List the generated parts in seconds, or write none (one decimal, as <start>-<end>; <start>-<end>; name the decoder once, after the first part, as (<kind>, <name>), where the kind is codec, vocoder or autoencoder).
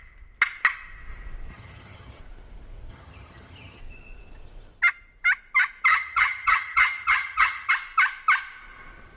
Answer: 1.5-2.2 (vocoder, HiFi-GAN); 2.9-3.8; 5.9-7.7